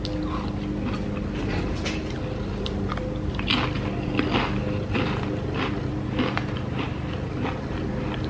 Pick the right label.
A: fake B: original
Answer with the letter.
B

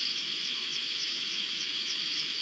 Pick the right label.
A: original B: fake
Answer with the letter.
B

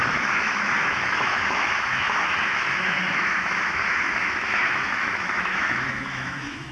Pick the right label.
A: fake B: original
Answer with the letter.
A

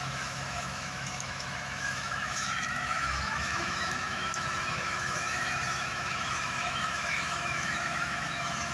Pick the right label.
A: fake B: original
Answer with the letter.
A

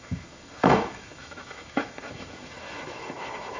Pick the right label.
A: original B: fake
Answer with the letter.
B